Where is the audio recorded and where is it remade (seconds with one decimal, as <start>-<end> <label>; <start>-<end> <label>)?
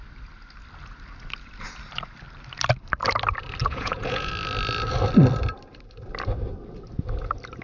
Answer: 0.0-3.6 recorded; 3.6-4.3 remade; 4.3-7.6 recorded